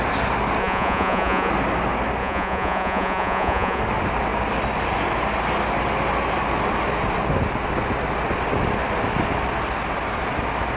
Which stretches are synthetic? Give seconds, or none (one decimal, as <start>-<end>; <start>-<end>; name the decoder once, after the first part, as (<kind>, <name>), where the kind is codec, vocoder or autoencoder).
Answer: 0.6-1.5 (vocoder, Vocos); 2.2-3.8

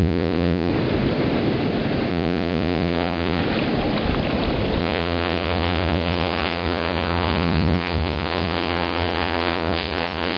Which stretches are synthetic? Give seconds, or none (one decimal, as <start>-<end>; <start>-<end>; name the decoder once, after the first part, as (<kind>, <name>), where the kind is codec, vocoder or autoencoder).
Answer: 0.0-0.7 (vocoder, Vocos); 2.1-3.4; 4.8-10.4

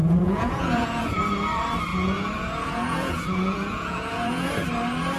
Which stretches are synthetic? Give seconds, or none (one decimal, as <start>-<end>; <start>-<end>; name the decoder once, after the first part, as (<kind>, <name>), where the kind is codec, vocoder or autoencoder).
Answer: 0.0-1.2 (vocoder, Vocos); 1.9-4.5

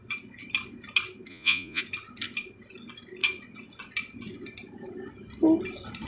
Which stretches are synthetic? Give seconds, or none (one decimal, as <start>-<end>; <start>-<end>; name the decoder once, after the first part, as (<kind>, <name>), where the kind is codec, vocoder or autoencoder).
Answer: 1.3-1.8 (vocoder, Vocos)